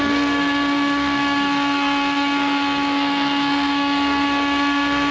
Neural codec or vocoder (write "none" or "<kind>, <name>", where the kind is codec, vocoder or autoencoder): codec, SNAC